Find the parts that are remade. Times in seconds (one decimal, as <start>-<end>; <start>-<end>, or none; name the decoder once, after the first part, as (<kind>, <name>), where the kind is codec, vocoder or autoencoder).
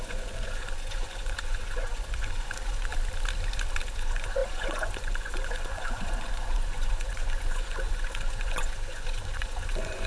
0.0-2.9 (vocoder, Vocos); 3.9-10.1